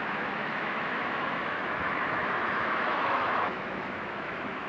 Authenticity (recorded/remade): remade